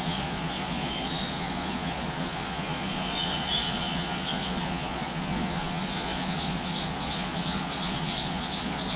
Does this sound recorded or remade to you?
remade